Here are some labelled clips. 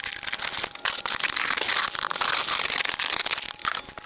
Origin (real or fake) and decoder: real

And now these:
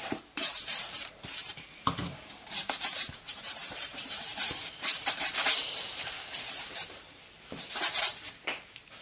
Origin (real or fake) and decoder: fake, vocoder, BigVGAN v2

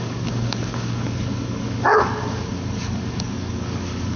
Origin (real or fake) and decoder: fake, codec, DAC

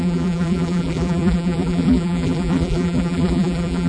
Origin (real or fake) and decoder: fake, vocoder, BigVGAN v2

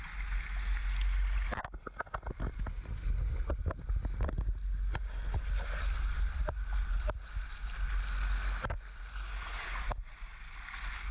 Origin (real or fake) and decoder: real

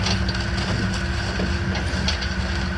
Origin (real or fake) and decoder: real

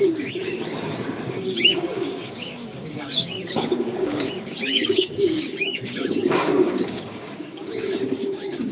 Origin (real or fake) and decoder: fake, codec, DAC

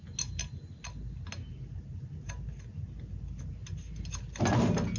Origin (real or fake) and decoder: real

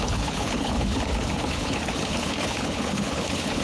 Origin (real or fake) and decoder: fake, codec, HILCodec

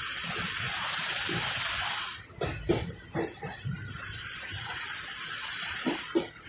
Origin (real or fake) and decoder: real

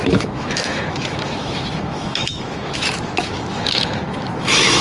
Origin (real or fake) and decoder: fake, autoencoder, DAC-VAE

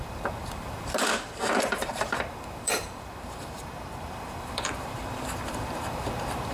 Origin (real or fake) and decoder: fake, vocoder, BigVGAN v2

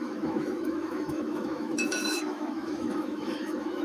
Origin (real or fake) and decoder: fake, autoencoder, DAC-VAE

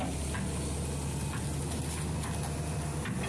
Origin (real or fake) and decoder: real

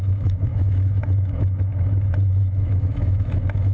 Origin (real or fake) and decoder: fake, autoencoder, DAC-VAE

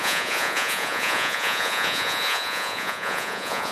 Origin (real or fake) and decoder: fake, vocoder, Vocos